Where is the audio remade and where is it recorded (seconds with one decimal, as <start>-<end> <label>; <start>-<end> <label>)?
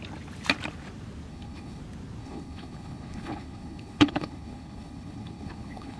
0.0-1.3 recorded; 1.3-1.8 remade; 1.8-2.2 recorded; 2.2-6.0 remade